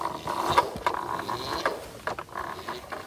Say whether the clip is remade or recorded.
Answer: recorded